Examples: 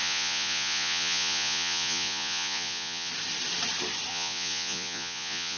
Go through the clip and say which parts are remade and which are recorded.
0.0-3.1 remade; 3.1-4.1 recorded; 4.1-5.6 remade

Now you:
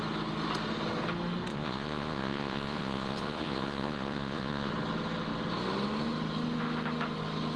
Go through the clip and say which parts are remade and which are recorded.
0.0-1.5 recorded; 1.5-4.7 remade; 4.7-7.6 recorded

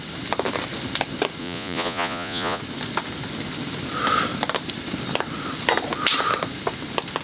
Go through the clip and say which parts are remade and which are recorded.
0.0-1.4 recorded; 1.4-2.6 remade; 2.6-7.2 recorded

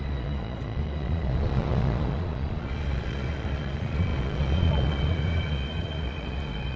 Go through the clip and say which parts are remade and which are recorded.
0.0-6.8 remade